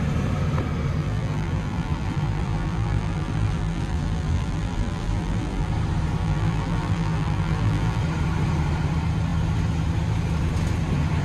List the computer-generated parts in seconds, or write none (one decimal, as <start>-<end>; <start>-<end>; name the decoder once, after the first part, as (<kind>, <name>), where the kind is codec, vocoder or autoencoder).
1.0-5.7 (vocoder, BigVGAN v2); 6.2-8.0